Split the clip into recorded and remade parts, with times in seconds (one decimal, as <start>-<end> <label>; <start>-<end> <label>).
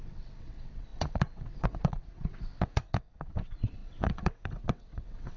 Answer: 0.0-5.4 remade